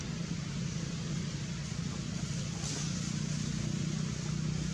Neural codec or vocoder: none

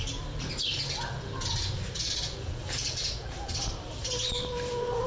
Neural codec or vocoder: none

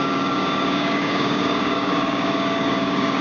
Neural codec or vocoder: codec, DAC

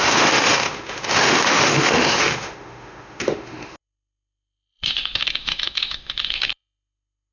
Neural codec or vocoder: autoencoder, DAC-VAE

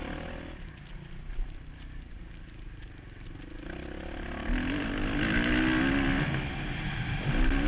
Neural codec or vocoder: none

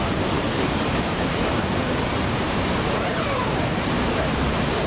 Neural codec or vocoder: vocoder, BigVGAN v2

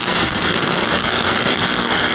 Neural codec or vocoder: codec, SNAC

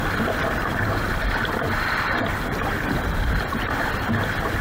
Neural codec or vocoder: none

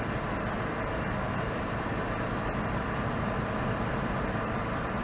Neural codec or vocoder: none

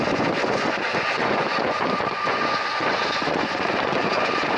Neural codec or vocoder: vocoder, Vocos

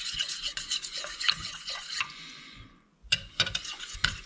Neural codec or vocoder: vocoder, Vocos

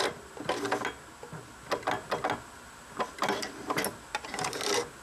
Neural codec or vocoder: none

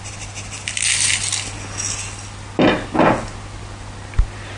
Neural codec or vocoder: none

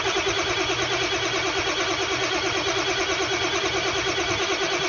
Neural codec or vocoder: none